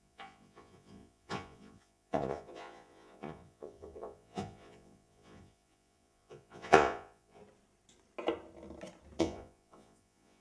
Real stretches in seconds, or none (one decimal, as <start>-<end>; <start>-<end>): 7.4-9.2